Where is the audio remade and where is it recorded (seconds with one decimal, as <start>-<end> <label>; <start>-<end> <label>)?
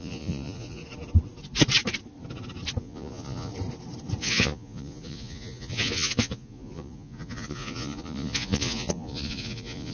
0.0-0.8 remade; 0.8-2.8 recorded; 2.8-3.5 remade; 3.5-4.2 recorded; 4.2-9.9 remade